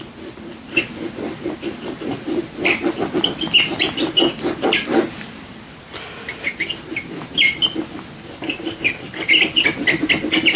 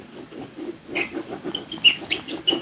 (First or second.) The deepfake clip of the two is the second